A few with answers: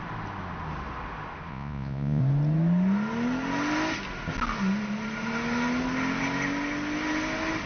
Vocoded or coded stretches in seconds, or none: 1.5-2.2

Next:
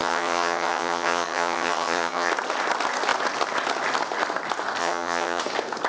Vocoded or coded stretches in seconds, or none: 0.0-2.3; 4.8-5.4

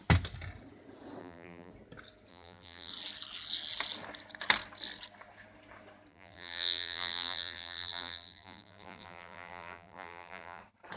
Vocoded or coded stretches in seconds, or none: 1.2-1.7; 2.3-2.9; 6.1-10.6

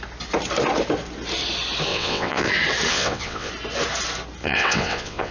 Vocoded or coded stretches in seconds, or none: 1.9-2.5; 2.9-3.5; 4.4-5.3